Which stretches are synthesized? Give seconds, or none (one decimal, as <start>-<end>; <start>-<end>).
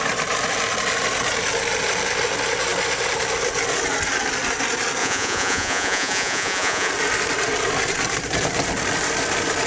5.0-6.9